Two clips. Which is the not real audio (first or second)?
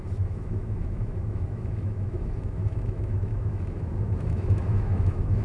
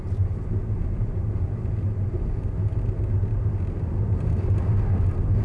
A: first